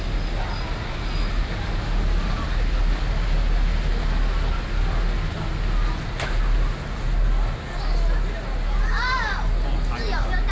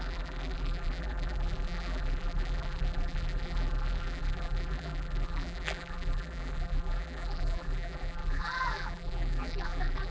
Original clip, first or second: first